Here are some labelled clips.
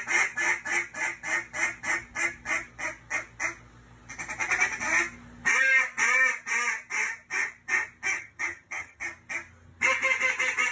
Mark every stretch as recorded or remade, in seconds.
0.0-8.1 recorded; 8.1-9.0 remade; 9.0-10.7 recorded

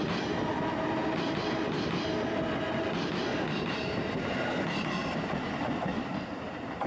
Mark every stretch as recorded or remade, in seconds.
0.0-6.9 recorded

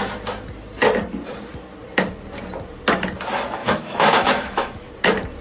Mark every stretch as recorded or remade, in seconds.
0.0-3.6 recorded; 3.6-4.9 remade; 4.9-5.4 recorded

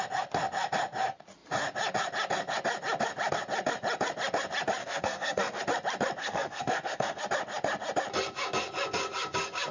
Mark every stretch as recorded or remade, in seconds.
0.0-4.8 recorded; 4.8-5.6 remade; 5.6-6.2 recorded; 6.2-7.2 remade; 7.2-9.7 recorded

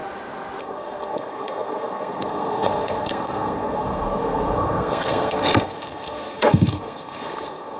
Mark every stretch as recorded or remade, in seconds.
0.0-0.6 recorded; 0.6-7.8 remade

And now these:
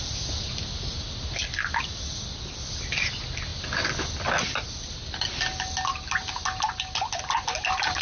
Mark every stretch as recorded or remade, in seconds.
0.0-8.0 recorded

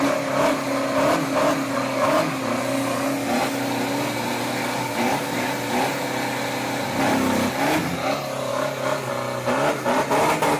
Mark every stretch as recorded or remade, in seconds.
0.0-1.7 recorded; 1.7-2.4 remade; 2.4-4.6 recorded; 4.6-5.5 remade; 5.5-8.5 recorded; 8.5-9.1 remade; 9.1-10.6 recorded